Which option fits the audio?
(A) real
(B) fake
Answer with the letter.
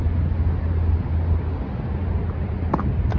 A